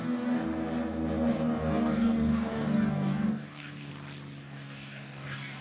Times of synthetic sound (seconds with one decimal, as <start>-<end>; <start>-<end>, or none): 0.0-0.4; 1.3-3.9; 4.4-5.6